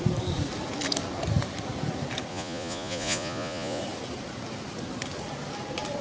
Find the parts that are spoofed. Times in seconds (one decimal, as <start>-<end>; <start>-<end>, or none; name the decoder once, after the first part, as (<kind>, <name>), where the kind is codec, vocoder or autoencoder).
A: 2.3-3.8 (vocoder, Vocos)